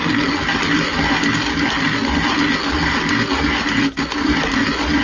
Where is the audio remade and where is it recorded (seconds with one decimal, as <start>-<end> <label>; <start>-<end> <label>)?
0.0-5.0 recorded

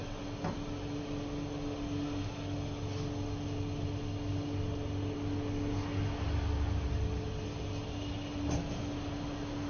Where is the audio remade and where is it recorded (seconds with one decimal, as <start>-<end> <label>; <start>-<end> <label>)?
0.0-9.7 recorded

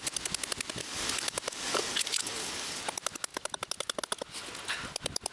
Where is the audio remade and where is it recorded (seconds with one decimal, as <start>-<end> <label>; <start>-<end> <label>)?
0.0-0.8 recorded; 0.8-2.8 remade; 2.8-5.3 recorded